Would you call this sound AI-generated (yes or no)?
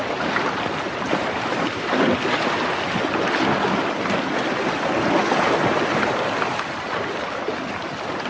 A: no